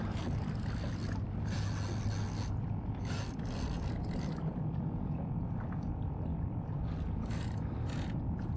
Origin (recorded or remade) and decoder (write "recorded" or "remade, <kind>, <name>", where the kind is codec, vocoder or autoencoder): recorded